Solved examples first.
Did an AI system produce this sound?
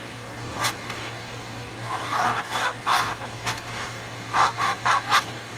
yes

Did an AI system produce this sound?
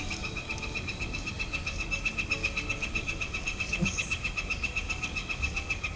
yes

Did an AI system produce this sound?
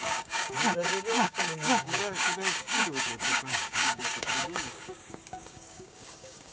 yes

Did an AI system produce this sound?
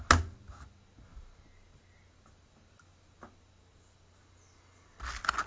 no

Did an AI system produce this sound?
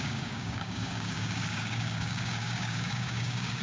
yes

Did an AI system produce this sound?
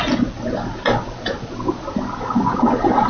no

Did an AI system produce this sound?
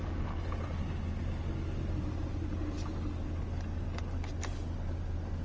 no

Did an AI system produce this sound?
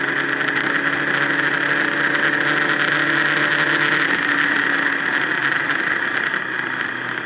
no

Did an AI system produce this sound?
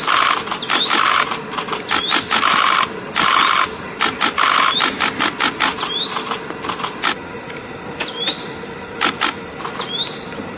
no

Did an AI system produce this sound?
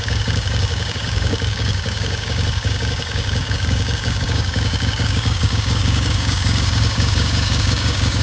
yes